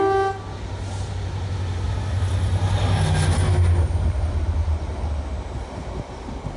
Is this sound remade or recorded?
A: recorded